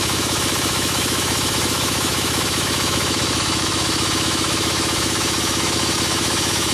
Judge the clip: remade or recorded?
remade